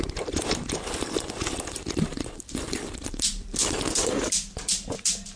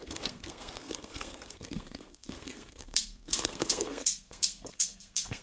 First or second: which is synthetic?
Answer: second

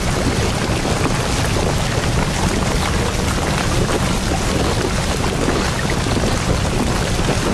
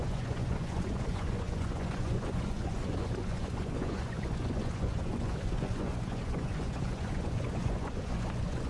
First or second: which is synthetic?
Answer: second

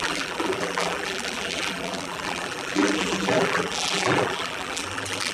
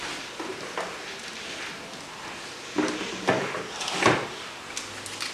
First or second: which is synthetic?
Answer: first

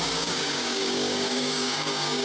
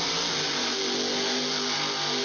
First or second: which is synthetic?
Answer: first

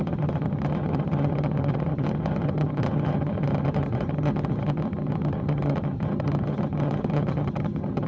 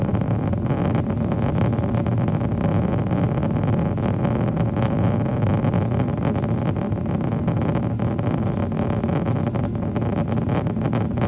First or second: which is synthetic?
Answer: first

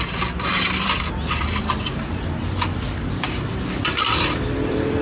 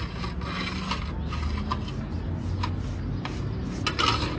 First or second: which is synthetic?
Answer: first